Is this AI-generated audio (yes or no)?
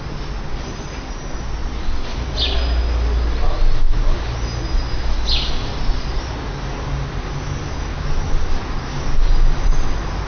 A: no